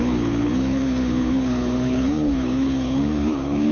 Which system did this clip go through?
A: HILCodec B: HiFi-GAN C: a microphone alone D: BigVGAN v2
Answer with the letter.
A